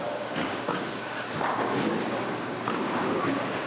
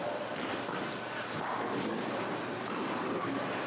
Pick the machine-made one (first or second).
first